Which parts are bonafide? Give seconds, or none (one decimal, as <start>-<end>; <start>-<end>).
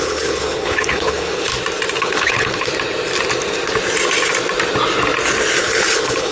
1.5-2.0; 2.7-5.6